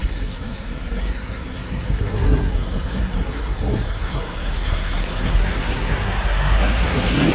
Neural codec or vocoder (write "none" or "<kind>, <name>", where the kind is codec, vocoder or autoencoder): codec, SNAC